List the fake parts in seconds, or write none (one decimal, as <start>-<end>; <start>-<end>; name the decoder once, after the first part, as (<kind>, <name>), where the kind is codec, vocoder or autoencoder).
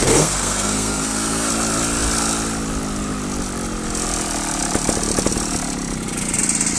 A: 0.0-1.5 (codec, SNAC)